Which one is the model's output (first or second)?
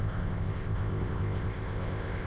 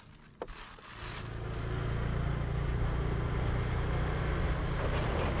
first